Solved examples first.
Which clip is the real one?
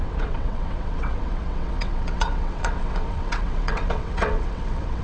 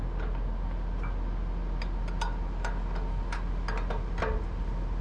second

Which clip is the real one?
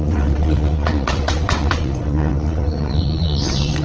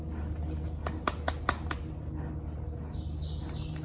second